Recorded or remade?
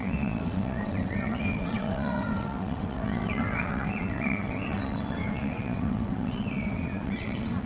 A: remade